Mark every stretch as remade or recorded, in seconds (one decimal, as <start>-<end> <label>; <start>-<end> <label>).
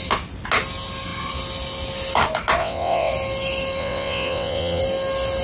0.0-2.6 recorded; 2.6-3.1 remade; 3.1-3.8 recorded; 3.8-4.8 remade; 4.8-5.4 recorded